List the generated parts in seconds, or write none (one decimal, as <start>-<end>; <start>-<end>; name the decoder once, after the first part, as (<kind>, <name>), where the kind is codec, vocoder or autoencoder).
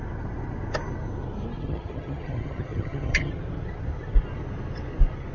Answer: 1.6-3.3 (vocoder, HiFi-GAN)